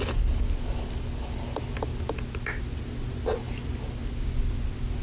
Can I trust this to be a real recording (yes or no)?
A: yes